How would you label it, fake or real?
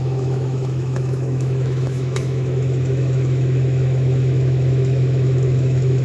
fake